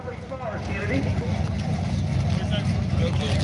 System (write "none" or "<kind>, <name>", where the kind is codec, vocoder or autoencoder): none